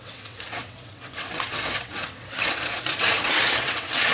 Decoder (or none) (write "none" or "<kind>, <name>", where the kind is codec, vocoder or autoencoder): vocoder, WaveNeXt